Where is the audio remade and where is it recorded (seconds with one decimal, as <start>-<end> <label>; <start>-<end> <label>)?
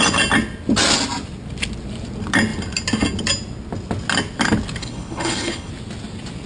0.0-4.8 recorded; 4.8-5.7 remade; 5.7-6.5 recorded